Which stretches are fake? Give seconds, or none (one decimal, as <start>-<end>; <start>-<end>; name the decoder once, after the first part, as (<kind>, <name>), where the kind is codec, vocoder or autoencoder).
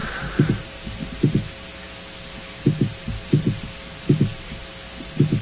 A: 0.0-5.4 (vocoder, BigVGAN v2)